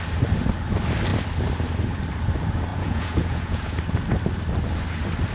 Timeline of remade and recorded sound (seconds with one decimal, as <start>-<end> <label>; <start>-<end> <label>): 0.0-2.7 recorded; 2.7-3.8 remade; 3.8-5.3 recorded